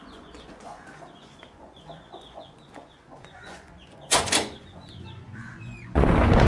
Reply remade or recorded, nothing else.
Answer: remade